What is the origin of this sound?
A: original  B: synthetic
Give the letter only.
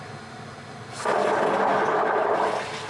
A